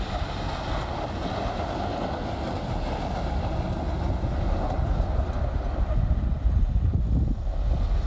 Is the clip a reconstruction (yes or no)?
no